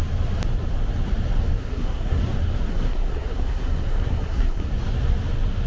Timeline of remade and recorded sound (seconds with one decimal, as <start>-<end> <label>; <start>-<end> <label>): 0.0-1.6 recorded; 1.6-2.2 remade; 2.2-2.7 recorded; 2.7-4.7 remade; 4.7-5.7 recorded